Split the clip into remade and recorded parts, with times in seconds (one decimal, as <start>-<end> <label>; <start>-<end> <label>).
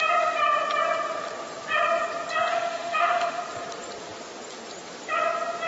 0.0-2.5 recorded; 2.5-3.4 remade; 3.4-5.7 recorded